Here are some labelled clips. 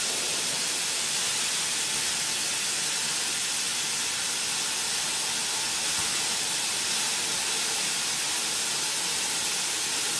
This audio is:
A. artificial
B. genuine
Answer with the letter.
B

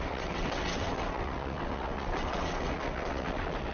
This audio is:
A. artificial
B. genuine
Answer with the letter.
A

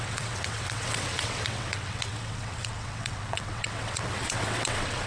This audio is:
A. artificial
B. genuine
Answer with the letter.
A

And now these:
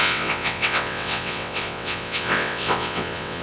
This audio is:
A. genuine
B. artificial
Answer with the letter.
B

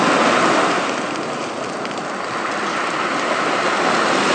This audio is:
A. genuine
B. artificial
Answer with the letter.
A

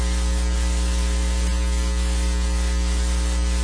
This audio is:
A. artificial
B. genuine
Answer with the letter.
B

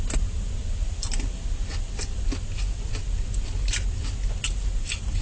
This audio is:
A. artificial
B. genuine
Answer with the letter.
B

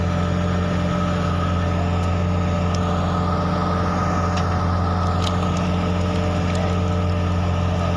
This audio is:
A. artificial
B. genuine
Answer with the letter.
B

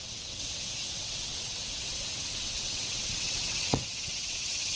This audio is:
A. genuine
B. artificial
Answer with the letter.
B